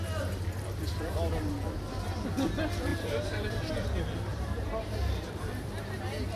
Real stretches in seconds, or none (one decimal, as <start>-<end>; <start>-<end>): 0.0-2.9; 3.7-4.3; 6.0-6.4